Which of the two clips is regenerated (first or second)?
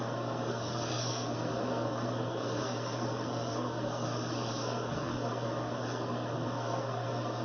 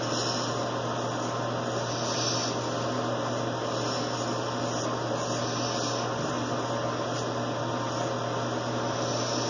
first